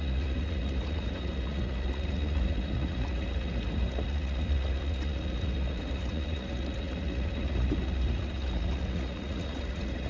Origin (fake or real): fake